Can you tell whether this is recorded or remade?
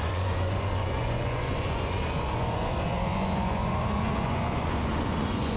remade